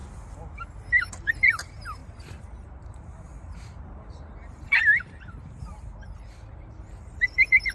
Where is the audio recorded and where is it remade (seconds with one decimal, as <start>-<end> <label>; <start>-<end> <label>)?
0.0-1.1 recorded; 1.1-5.7 remade; 5.7-6.5 recorded; 6.5-7.7 remade